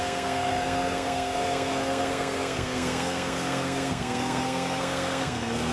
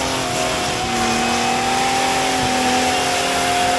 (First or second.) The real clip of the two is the second